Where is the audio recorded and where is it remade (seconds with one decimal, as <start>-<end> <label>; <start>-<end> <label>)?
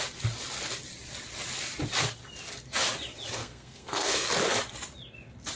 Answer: 0.0-3.4 recorded; 3.4-4.3 remade; 4.3-5.6 recorded